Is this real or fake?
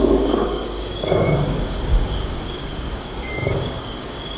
fake